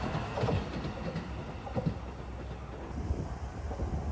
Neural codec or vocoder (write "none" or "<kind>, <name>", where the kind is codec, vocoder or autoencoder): none